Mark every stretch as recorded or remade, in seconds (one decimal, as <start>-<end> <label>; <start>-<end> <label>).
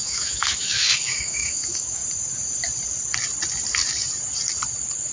0.0-2.0 remade; 2.0-5.1 recorded